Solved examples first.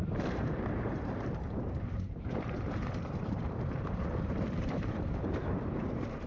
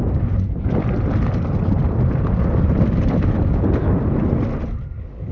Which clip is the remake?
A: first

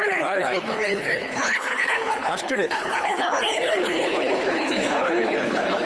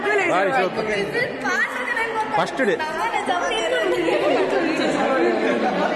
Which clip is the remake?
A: first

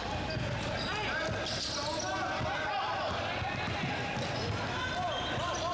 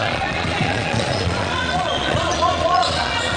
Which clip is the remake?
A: second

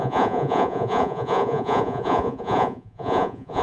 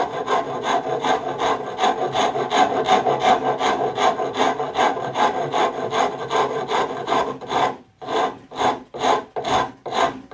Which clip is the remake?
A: first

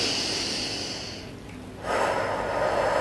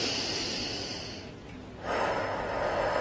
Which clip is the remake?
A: second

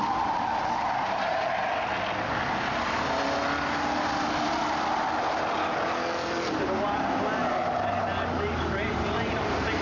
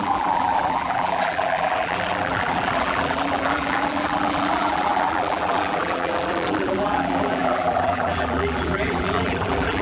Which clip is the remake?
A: second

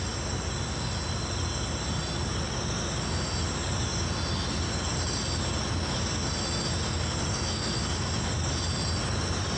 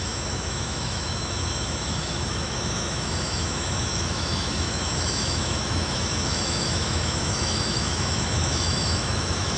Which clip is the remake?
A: second